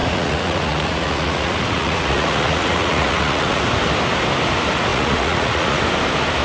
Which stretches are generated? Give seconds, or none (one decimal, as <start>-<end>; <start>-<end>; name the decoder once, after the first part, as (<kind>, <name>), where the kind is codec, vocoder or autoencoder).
0.0-3.6 (vocoder, Vocos); 4.9-5.8